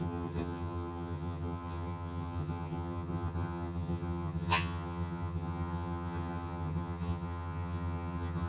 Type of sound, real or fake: fake